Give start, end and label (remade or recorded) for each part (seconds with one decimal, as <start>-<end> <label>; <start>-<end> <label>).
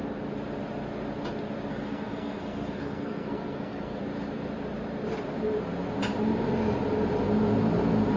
0.0-1.7 recorded; 1.7-4.0 remade; 4.0-8.2 recorded